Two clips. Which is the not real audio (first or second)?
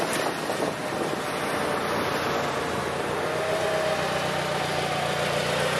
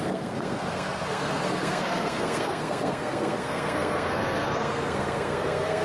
second